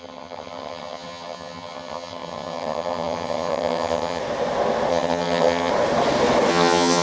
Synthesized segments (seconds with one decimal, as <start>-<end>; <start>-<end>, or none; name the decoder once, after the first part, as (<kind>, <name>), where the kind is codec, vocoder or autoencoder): 0.0-4.2 (vocoder, HiFi-GAN); 4.9-5.7; 6.5-7.0